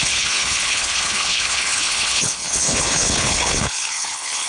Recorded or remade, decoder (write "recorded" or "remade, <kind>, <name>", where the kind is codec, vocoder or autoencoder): remade, codec, HILCodec